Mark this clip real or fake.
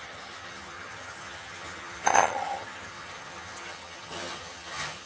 fake